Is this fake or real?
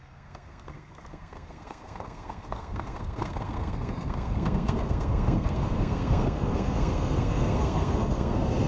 fake